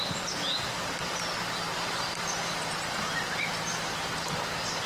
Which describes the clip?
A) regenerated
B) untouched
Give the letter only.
B